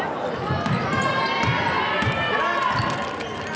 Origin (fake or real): real